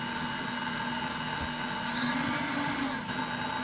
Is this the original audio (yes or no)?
yes